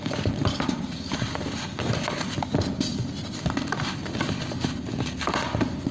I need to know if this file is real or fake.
fake